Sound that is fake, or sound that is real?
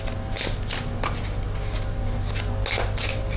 real